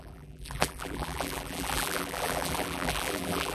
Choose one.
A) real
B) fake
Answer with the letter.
B